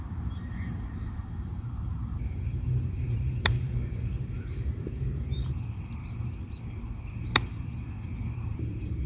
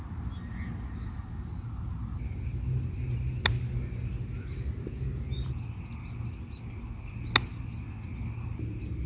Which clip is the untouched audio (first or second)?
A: second